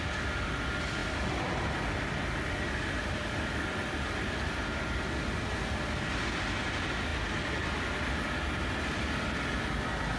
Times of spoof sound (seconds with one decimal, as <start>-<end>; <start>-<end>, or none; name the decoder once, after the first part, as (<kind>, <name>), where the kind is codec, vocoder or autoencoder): none